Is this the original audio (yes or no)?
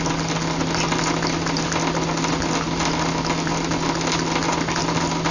yes